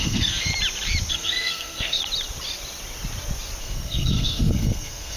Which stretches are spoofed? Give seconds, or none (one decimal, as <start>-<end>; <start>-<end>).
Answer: 0.0-0.5; 1.1-2.0; 3.6-5.2